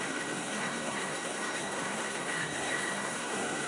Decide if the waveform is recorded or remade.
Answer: remade